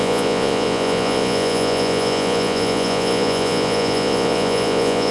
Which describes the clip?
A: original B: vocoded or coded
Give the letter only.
B